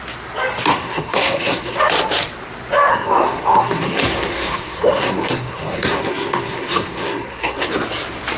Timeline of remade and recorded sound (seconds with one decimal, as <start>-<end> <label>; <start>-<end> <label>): 0.0-0.7 recorded; 0.7-1.8 remade; 1.8-2.9 recorded; 2.9-7.7 remade; 7.7-8.4 recorded